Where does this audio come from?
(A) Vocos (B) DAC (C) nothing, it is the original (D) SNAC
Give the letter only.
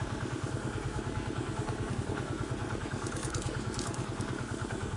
D